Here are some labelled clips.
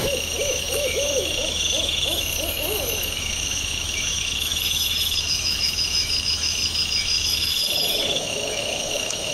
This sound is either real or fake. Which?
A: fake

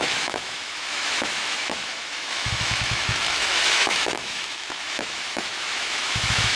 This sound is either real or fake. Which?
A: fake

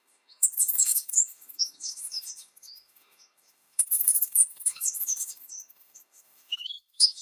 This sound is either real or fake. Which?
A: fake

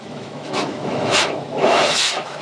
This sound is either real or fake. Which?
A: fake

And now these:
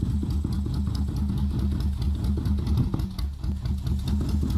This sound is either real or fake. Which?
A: real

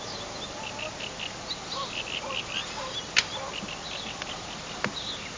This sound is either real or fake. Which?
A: real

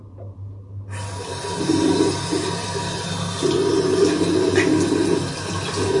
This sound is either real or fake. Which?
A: real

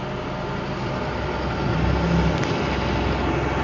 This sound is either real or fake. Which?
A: real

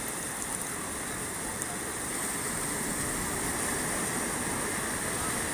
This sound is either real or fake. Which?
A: real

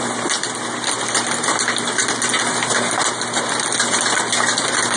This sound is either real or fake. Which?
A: real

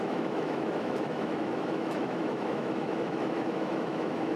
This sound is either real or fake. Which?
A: fake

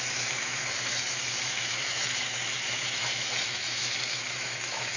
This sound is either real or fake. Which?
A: fake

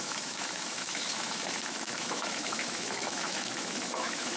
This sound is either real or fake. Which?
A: fake